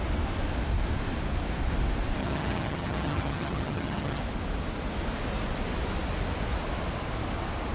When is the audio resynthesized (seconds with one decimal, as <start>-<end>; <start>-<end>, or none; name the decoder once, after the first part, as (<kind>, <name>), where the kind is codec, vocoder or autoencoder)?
2.2-4.2 (vocoder, HiFi-GAN)